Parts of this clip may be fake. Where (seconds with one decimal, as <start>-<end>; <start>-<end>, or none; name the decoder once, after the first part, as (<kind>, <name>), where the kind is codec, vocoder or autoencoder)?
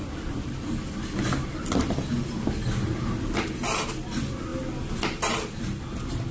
none